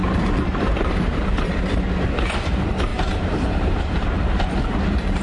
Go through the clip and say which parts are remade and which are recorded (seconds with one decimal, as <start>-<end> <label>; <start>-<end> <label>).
0.0-1.6 remade; 1.6-2.9 recorded; 2.9-3.8 remade; 3.8-5.2 recorded